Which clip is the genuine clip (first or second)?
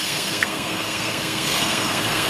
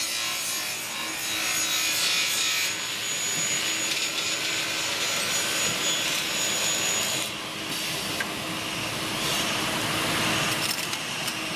second